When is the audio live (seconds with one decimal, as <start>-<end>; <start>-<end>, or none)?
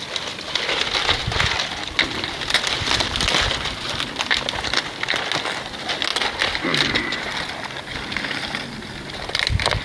0.0-9.8